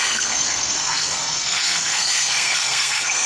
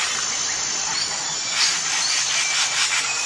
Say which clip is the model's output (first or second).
first